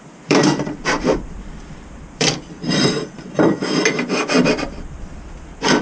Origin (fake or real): fake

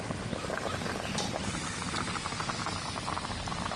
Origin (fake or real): real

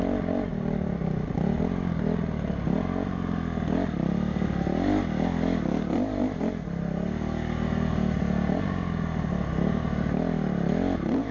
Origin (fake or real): real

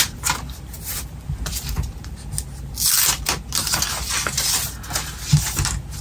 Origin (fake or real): real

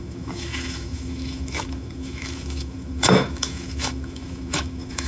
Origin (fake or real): fake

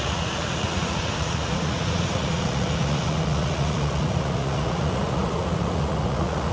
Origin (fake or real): fake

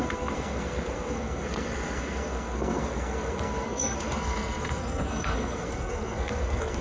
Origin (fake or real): fake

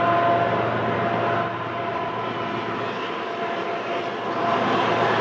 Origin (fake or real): real